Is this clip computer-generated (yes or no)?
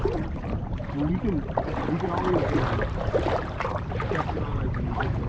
yes